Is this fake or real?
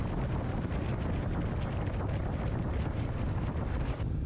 real